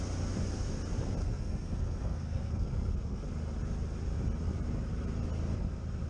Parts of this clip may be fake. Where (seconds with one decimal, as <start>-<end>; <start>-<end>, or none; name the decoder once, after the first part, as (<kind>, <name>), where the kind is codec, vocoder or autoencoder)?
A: 1.2-3.3 (codec, SNAC)